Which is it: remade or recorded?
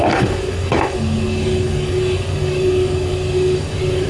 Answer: remade